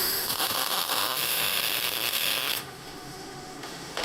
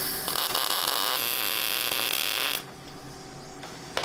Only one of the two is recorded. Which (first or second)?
second